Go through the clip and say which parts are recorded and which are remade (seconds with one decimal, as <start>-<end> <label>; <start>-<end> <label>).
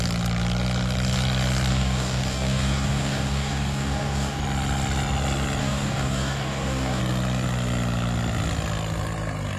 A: 0.0-1.7 recorded; 1.7-4.4 remade; 4.4-5.6 recorded; 5.6-7.0 remade; 7.0-9.6 recorded